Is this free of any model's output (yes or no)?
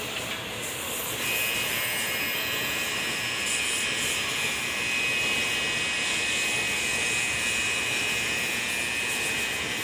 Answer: yes